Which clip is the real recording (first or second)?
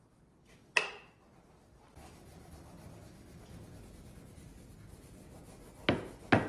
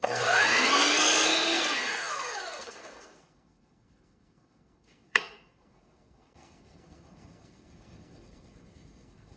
first